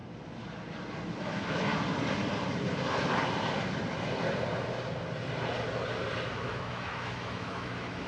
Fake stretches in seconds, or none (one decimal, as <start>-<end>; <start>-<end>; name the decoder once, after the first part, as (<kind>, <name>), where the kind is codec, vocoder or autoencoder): 1.2-1.7 (autoencoder, DAC-VAE); 6.3-8.1